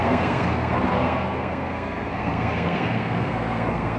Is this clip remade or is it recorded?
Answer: remade